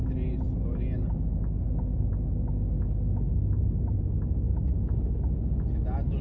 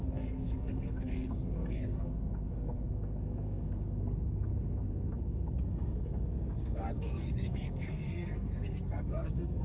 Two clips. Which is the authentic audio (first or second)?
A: first